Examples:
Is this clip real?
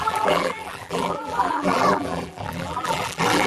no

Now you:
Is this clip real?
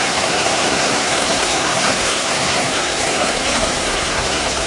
no